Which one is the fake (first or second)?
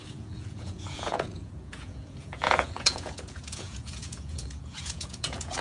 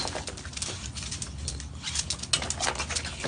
first